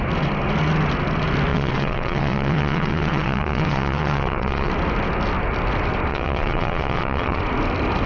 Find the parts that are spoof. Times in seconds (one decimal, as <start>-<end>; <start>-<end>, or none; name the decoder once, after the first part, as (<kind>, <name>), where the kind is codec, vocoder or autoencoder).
1.5-4.7 (vocoder, WaveNeXt); 6.1-7.4